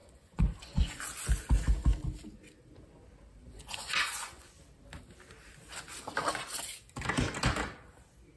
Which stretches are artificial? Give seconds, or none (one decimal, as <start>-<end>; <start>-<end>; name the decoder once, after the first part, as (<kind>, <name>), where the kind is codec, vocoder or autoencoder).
0.0-1.0 (vocoder, Vocos); 3.4-4.6